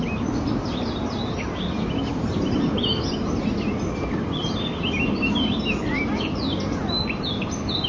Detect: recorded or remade recorded